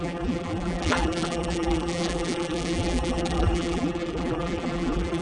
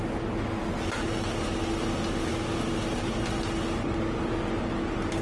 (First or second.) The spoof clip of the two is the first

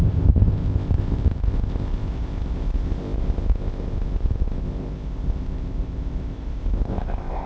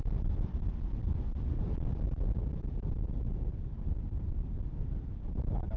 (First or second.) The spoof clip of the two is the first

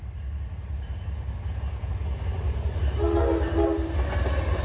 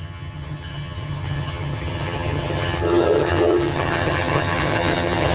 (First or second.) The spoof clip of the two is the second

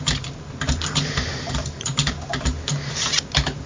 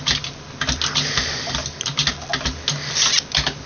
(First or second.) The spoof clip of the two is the first